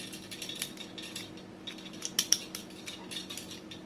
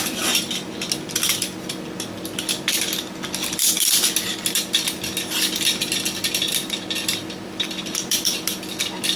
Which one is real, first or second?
first